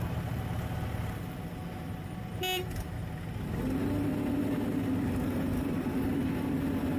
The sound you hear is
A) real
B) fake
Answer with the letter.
A